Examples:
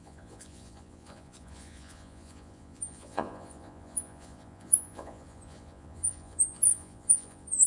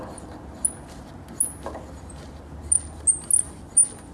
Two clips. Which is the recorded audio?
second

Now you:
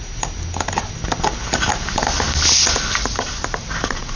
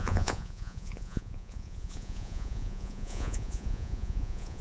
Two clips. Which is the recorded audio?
first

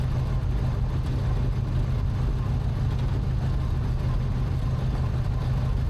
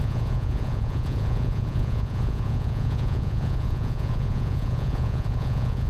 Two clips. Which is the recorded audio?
first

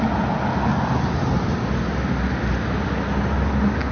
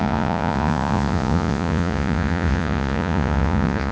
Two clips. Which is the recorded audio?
first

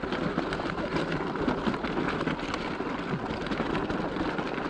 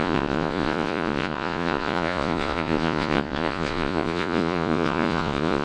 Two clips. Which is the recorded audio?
first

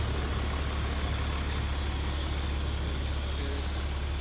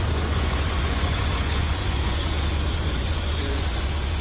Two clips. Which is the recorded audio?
first